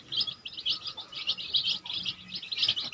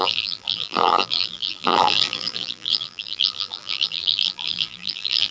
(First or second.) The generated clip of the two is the second